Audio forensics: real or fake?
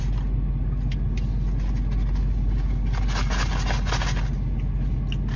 real